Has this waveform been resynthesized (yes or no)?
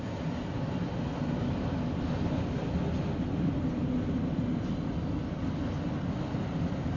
no